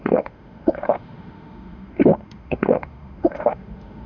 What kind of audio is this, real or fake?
fake